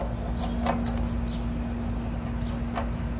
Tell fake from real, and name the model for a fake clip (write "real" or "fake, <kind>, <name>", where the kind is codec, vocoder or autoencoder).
real